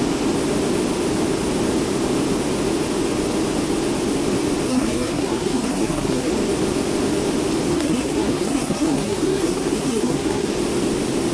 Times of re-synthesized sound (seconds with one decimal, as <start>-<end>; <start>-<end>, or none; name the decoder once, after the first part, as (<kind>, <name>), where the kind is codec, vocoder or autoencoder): 4.7-6.3 (codec, SNAC); 7.7-10.5